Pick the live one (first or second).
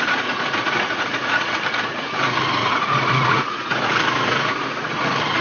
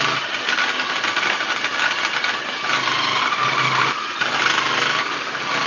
second